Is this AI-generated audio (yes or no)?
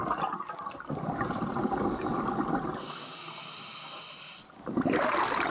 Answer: no